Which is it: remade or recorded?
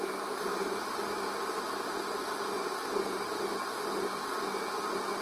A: recorded